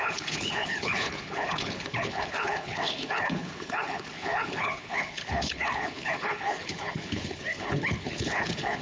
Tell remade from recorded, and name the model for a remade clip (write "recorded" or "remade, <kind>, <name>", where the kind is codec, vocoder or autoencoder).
remade, codec, HILCodec